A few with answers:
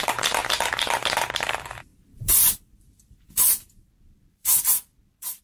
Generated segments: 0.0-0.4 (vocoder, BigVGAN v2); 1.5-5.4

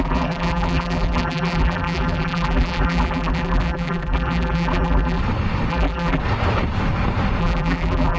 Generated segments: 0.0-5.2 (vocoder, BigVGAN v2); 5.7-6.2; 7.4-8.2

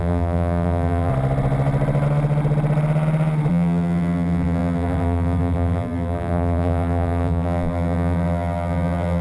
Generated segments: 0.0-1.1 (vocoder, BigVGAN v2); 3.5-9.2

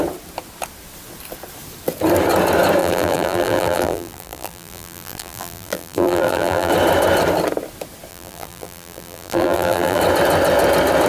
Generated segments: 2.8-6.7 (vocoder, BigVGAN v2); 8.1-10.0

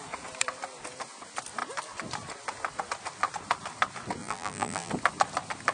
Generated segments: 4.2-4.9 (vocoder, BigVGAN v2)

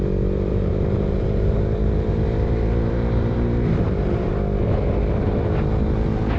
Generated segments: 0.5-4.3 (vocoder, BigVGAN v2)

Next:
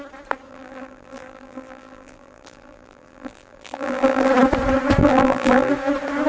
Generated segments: 0.5-4.3 (vocoder, BigVGAN v2); 5.0-5.7

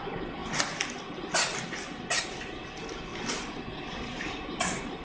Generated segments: none